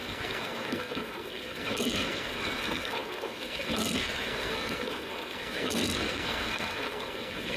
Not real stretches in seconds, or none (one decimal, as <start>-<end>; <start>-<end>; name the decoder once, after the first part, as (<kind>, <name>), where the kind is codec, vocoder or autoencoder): 0.0-7.6 (codec, SNAC)